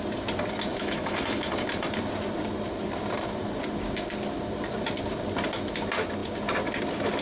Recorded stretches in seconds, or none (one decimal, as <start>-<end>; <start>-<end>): 0.0-0.7; 1.5-7.2